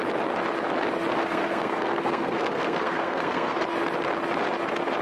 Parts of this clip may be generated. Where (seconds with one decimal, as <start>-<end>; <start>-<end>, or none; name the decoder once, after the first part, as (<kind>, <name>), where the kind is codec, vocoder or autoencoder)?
1.2-3.6 (codec, SNAC)